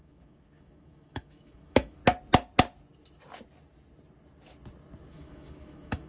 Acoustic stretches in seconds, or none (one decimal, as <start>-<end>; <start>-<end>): 2.0-5.1